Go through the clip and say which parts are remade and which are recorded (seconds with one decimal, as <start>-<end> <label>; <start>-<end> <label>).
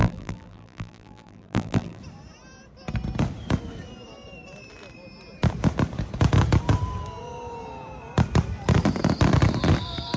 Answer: 0.0-2.0 remade; 2.0-10.2 recorded